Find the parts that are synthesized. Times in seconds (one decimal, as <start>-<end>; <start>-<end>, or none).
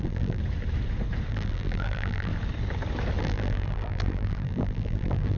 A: 0.0-0.4; 1.3-2.3; 3.2-5.4